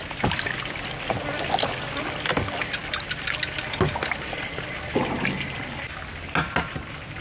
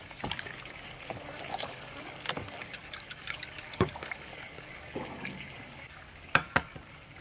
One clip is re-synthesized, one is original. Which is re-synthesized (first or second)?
second